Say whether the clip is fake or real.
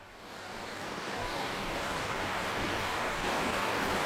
fake